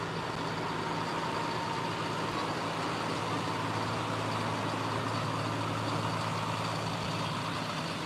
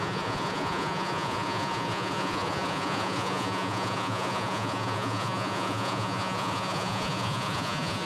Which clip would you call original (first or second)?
first